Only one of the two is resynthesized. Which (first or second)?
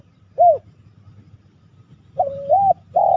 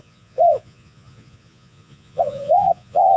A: second